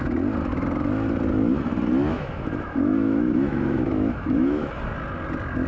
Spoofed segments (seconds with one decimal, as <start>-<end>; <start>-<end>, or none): 2.1-4.7